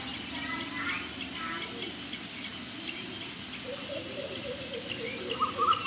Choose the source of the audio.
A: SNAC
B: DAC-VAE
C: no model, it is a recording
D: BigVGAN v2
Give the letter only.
C